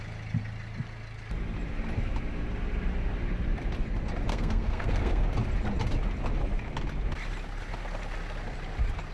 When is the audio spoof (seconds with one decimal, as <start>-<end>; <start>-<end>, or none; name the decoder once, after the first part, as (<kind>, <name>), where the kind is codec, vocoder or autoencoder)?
4.3-5.2 (codec, SNAC)

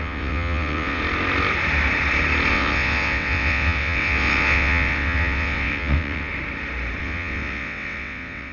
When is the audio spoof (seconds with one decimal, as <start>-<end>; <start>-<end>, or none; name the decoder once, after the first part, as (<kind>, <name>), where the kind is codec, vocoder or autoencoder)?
0.0-1.0 (vocoder, WaveNeXt); 2.5-6.3; 7.0-8.5

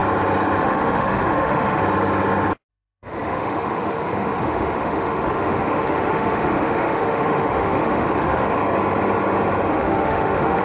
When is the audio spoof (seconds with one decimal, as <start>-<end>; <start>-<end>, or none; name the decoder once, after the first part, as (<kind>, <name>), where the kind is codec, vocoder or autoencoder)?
0.6-1.8 (autoencoder, DAC-VAE); 2.7-8.6; 9.7-10.6

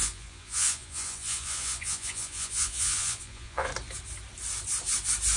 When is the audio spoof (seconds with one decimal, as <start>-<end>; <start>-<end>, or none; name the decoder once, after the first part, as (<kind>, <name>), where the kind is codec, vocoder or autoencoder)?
0.0-3.7 (vocoder, Vocos)

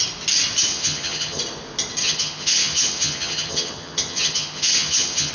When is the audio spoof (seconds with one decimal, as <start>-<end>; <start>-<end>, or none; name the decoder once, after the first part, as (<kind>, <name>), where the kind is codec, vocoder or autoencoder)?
0.7-1.4 (vocoder, HiFi-GAN); 2.0-5.3

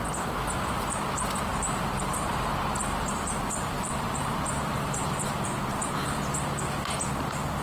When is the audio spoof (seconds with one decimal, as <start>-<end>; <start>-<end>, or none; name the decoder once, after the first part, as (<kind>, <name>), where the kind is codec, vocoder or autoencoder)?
1.5-2.3 (vocoder, BigVGAN v2); 2.8-5.5

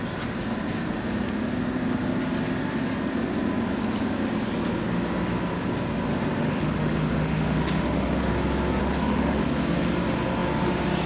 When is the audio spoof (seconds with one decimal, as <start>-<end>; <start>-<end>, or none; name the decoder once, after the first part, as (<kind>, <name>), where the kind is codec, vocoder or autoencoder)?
6.4-8.3 (autoencoder, DAC-VAE); 8.8-9.4

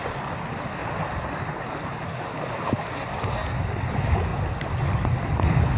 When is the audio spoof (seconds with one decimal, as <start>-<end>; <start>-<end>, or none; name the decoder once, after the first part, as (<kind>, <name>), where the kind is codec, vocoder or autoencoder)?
none